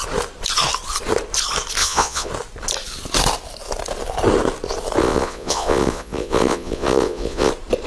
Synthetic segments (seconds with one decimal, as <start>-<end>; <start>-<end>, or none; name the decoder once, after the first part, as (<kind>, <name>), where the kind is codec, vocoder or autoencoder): 1.8-2.3 (vocoder, Vocos); 5.0-7.5